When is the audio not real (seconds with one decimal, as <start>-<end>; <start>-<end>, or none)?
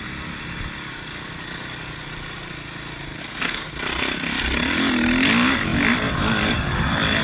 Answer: 3.2-3.7